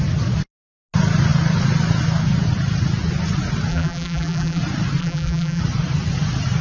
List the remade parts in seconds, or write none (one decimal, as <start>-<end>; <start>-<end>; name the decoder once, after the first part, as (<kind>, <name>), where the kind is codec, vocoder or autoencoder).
3.7-4.6 (vocoder, BigVGAN v2); 5.0-5.6